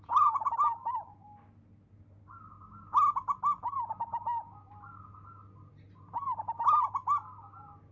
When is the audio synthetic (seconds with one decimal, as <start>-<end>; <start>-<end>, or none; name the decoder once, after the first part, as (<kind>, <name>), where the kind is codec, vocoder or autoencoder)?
none